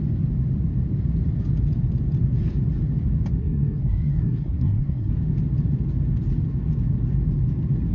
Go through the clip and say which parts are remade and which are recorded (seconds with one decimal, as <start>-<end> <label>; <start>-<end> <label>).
0.0-3.4 recorded; 3.4-5.1 remade; 5.1-7.9 recorded